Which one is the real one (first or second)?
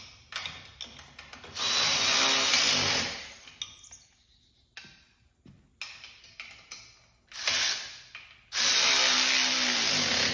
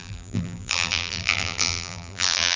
first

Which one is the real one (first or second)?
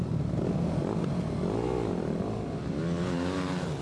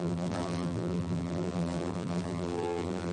first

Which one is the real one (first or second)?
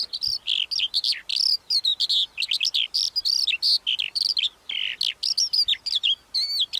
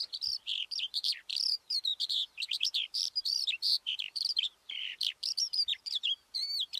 first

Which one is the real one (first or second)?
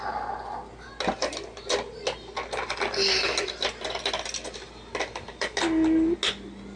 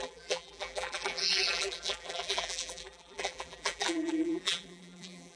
first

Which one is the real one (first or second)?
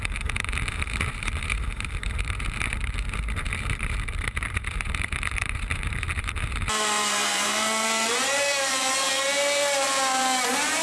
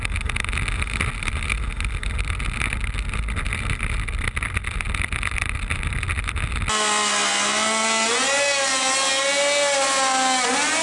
second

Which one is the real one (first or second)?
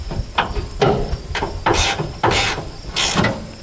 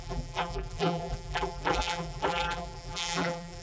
first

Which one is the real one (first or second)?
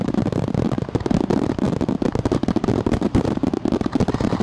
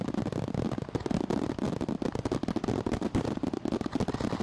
second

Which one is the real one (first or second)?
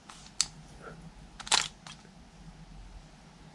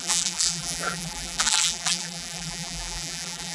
first